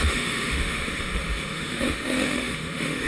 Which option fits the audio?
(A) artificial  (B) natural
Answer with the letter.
A